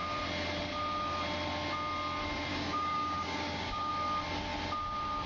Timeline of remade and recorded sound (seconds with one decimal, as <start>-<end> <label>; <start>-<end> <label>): 0.0-2.5 recorded; 2.5-3.9 remade; 3.9-5.3 recorded

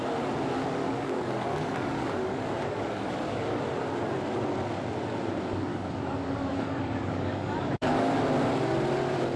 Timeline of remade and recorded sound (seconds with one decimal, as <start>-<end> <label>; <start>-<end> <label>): 0.0-0.8 recorded; 0.8-3.6 remade; 3.6-5.7 recorded; 5.7-8.1 remade; 8.1-9.4 recorded

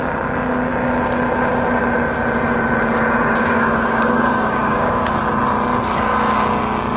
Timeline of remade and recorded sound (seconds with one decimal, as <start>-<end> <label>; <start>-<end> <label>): 0.0-3.2 recorded; 3.2-5.2 remade; 5.2-7.0 recorded

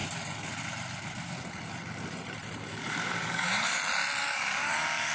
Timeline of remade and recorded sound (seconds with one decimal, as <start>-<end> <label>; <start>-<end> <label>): 0.0-2.6 recorded; 2.6-3.8 remade; 3.8-4.2 recorded; 4.2-5.1 remade

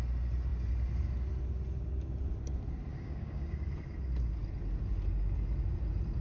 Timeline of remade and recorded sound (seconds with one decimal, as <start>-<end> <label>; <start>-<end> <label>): 0.0-2.9 recorded; 2.9-3.7 remade; 3.7-6.2 recorded

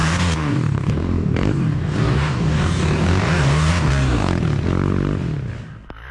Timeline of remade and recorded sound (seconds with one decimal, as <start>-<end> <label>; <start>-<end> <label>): 0.0-4.3 remade; 4.3-6.1 recorded